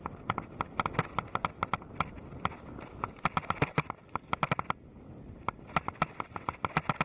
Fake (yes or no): no